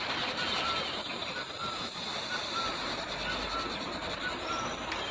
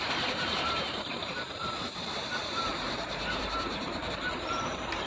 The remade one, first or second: second